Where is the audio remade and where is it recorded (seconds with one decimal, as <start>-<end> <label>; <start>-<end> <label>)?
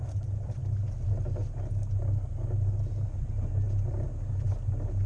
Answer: 0.0-5.1 recorded